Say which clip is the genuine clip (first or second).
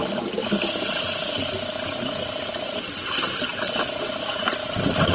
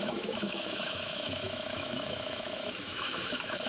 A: first